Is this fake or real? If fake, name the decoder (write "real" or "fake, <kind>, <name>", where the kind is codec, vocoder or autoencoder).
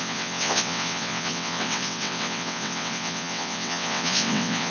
fake, vocoder, WaveNeXt